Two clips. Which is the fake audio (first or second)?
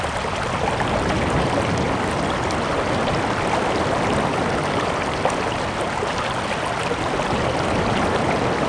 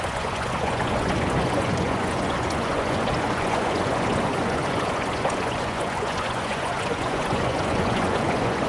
second